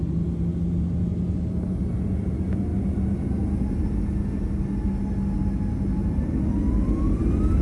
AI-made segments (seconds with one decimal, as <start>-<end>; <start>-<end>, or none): none